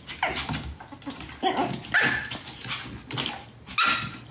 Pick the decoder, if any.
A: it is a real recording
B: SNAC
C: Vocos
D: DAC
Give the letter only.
A